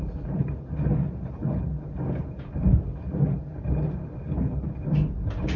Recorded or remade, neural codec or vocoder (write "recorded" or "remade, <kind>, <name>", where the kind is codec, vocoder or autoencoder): recorded